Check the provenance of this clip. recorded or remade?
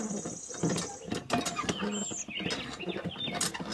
recorded